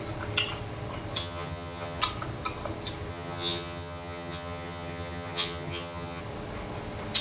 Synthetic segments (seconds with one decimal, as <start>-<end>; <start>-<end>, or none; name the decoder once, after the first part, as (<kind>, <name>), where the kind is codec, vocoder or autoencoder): 1.2-2.0 (vocoder, HiFi-GAN); 3.1-6.2

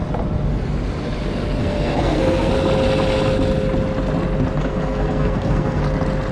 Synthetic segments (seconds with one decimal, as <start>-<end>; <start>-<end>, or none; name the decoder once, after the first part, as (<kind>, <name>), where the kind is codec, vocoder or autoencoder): 1.6-2.5 (codec, SNAC); 4.6-5.8